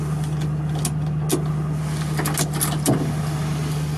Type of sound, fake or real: real